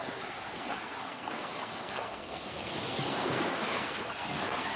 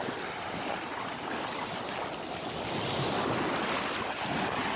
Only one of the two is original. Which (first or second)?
second